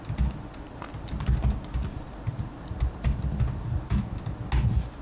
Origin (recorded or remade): recorded